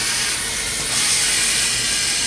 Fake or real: real